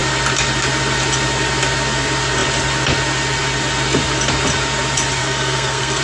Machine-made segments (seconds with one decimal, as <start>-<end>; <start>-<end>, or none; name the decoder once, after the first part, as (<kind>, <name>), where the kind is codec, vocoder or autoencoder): 5.2-6.0 (codec, SNAC)